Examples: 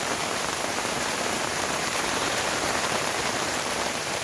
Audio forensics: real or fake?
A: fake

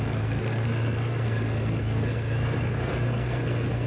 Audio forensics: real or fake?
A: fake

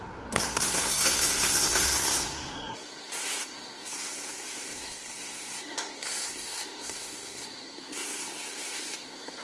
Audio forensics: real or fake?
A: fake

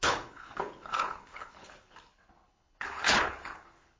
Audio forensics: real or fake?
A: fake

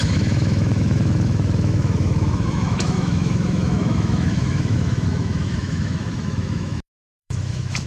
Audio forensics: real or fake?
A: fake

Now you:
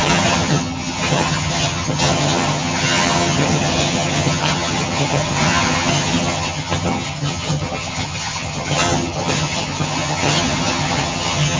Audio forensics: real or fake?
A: fake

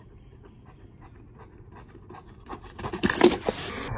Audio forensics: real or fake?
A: real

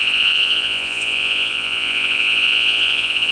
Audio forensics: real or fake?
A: fake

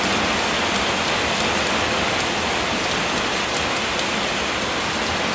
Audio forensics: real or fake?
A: real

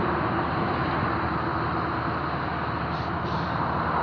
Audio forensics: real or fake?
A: real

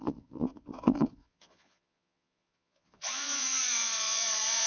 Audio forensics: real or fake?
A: fake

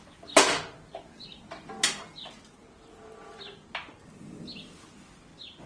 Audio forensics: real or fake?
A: real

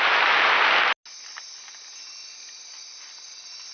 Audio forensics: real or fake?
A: real